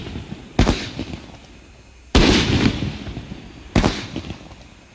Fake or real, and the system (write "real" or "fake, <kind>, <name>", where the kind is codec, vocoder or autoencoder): real